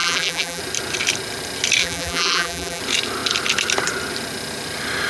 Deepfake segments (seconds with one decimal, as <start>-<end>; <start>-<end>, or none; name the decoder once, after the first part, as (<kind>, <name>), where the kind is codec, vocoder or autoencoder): 0.0-0.6 (vocoder, BigVGAN v2); 1.8-2.8